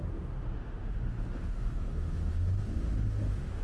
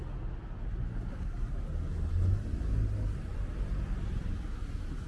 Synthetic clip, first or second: first